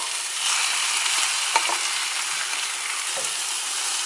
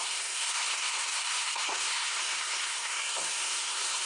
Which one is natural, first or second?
first